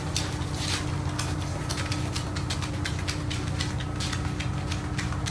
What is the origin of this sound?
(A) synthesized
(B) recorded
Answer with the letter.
B